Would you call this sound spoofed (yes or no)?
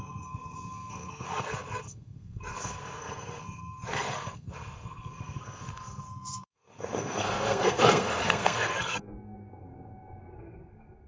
yes